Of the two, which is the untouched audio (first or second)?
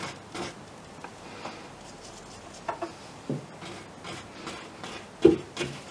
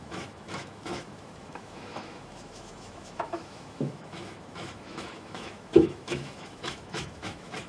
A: first